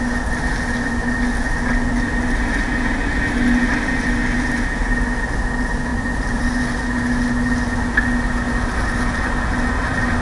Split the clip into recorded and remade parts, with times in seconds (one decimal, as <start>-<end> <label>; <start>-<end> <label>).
0.0-5.9 recorded; 5.9-6.6 remade; 6.6-10.2 recorded